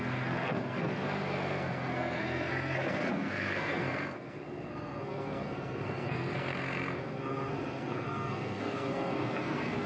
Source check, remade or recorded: remade